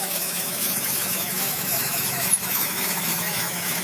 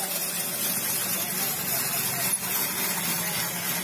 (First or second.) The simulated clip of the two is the first